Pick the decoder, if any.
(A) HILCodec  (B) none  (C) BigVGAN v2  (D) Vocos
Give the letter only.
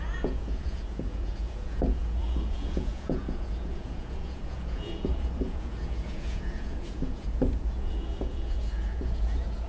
D